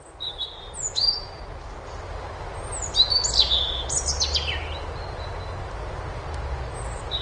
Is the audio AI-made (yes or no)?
yes